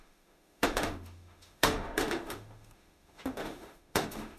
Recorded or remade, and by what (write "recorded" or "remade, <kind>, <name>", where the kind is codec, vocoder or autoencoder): remade, autoencoder, DAC-VAE